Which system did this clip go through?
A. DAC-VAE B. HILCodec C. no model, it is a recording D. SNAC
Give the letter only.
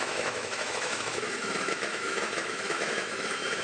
A